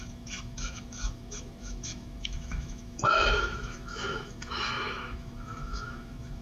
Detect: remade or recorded remade